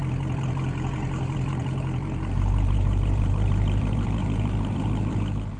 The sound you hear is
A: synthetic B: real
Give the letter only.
A